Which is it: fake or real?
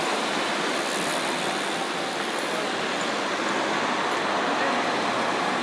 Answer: real